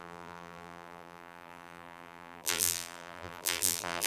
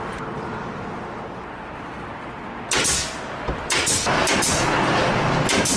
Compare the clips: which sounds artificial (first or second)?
first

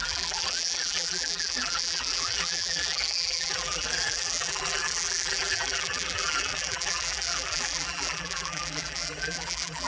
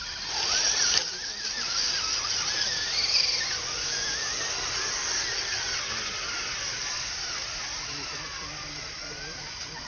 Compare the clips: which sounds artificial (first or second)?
first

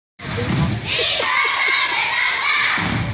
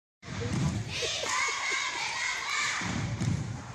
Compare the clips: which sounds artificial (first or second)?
second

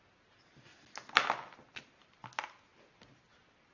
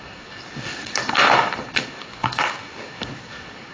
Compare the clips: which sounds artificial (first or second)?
second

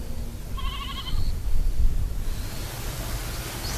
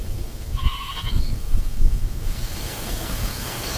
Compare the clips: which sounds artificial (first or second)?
second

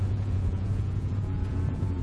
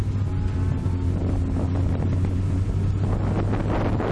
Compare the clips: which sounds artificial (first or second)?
first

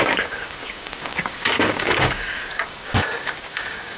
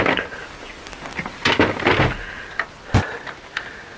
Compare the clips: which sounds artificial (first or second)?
first